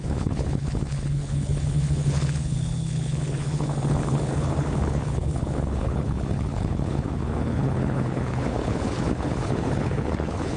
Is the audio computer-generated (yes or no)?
yes